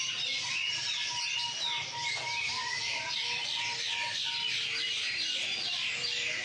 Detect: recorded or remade recorded